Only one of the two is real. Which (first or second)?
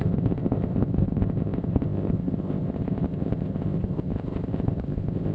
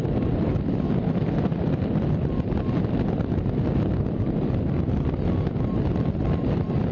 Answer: second